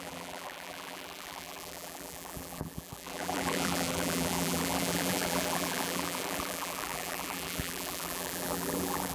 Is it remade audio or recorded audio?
remade